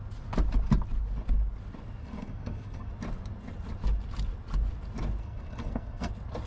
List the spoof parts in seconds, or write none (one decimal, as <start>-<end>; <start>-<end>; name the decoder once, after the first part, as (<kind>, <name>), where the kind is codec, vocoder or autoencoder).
2.0-2.9 (codec, SNAC); 5.2-6.1